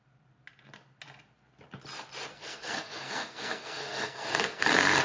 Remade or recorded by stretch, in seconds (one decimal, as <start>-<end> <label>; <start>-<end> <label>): 0.0-2.3 recorded; 2.3-5.0 remade